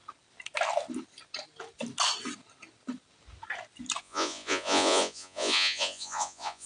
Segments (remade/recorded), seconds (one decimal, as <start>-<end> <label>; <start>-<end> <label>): 0.0-4.0 recorded; 4.0-6.7 remade